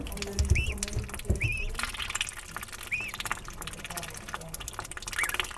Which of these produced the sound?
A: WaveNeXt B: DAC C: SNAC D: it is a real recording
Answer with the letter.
D